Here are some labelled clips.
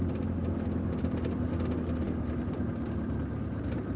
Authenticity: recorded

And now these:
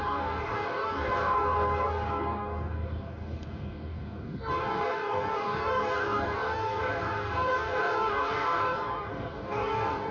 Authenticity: remade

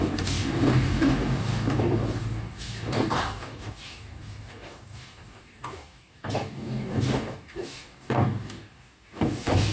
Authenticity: remade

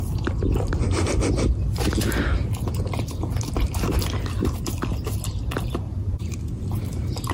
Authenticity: recorded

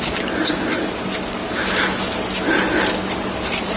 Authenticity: recorded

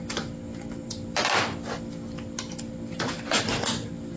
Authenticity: recorded